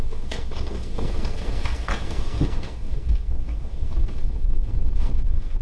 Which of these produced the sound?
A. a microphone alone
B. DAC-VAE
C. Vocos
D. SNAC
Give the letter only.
D